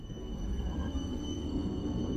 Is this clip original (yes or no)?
no